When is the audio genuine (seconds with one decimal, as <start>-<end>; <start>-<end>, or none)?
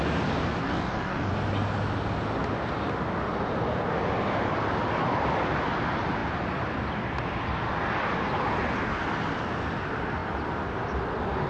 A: 0.0-0.6; 1.3-11.5